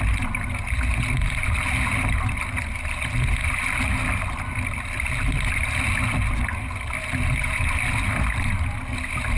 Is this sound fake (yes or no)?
no